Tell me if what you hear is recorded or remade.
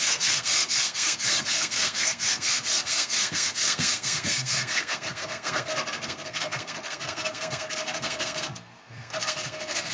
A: remade